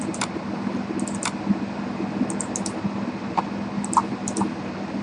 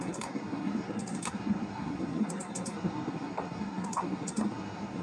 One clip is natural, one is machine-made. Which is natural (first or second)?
first